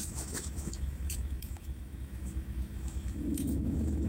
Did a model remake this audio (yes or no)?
yes